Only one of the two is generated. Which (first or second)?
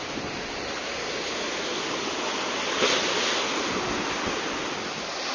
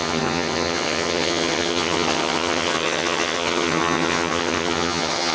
second